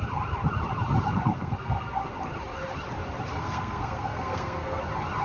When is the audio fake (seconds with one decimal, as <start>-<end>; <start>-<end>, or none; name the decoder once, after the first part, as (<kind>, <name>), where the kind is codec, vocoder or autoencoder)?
1.1-2.1 (codec, SNAC); 3.3-4.8

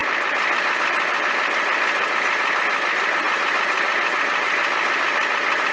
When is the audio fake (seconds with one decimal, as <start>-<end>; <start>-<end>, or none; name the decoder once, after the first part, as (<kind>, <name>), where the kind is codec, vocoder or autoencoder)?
none

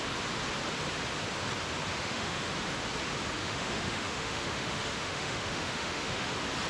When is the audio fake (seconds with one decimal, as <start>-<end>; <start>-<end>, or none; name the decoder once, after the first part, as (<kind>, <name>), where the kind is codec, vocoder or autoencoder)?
1.9-2.5 (autoencoder, DAC-VAE); 3.4-6.3

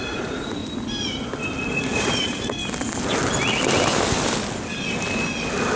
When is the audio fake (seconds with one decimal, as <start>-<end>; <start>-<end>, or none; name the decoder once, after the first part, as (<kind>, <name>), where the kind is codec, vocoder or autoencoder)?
0.0-0.6 (vocoder, Vocos); 1.7-2.6

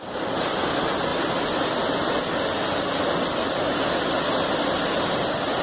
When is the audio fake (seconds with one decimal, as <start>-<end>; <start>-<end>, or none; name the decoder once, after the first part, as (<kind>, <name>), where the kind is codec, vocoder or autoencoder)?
none

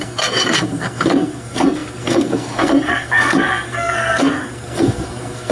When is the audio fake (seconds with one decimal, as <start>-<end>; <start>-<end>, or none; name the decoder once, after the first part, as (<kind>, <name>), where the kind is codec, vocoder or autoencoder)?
0.0-5.5 (codec, SNAC)

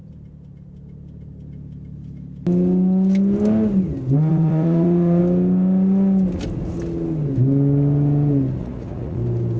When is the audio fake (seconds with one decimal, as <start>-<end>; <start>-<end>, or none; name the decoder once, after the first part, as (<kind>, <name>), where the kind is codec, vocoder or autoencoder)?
4.3-5.2 (vocoder, Vocos); 8.6-9.2

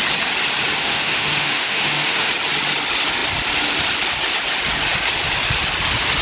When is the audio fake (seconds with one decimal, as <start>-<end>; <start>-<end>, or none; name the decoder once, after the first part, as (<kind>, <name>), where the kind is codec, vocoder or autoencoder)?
0.8-2.3 (autoencoder, DAC-VAE)